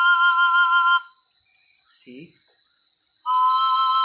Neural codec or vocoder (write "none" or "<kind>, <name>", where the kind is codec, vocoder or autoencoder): none